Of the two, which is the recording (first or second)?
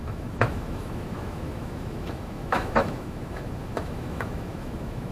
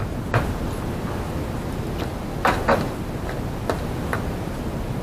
second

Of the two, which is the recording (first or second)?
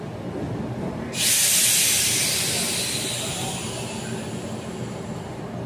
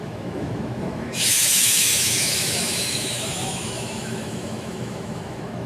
first